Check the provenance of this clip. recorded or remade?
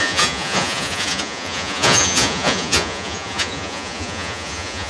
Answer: remade